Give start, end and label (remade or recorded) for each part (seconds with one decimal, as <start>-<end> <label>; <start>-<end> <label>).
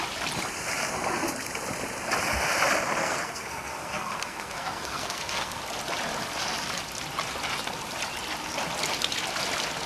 0.0-3.0 recorded; 3.0-5.6 remade; 5.6-9.9 recorded